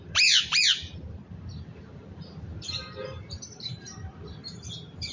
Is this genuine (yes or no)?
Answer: no